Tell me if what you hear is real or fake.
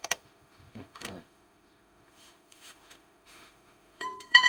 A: fake